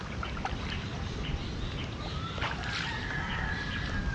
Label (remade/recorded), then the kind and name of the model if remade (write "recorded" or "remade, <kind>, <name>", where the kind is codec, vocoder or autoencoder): recorded